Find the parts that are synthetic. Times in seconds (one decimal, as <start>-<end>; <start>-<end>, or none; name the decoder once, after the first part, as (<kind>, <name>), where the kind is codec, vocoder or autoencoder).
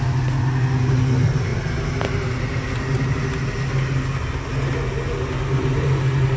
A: none